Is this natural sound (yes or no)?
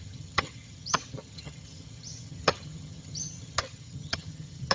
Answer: no